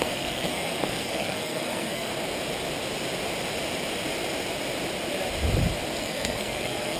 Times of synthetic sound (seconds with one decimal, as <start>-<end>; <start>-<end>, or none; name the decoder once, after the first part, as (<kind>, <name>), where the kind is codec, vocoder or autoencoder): 0.0-2.1 (codec, SNAC); 6.0-7.0